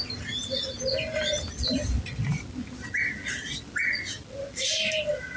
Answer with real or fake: real